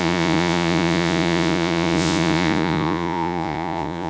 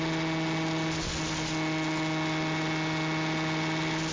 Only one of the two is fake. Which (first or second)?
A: first